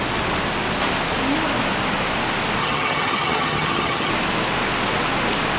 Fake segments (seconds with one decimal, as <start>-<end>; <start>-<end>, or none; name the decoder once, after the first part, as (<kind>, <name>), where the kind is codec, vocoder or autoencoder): 2.6-4.1 (vocoder, HiFi-GAN)